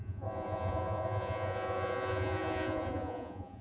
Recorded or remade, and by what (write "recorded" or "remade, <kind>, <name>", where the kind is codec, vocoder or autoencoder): remade, vocoder, Vocos